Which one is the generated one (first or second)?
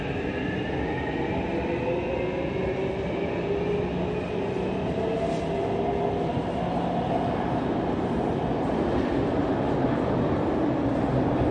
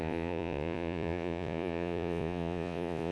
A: second